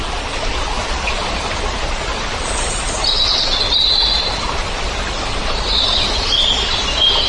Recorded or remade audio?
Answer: recorded